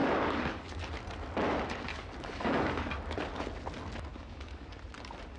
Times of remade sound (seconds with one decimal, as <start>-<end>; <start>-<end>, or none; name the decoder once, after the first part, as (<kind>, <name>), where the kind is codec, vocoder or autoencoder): 0.0-0.8 (codec, DAC); 1.9-2.9; 4.1-4.7